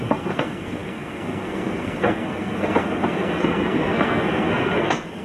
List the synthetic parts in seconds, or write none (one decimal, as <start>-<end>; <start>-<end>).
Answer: 0.0-5.2